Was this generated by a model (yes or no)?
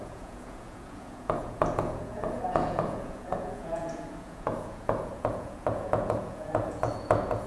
yes